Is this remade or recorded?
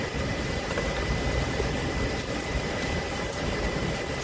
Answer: remade